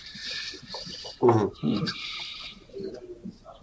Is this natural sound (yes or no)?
yes